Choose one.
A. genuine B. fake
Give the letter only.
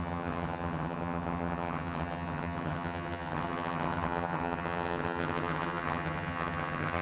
B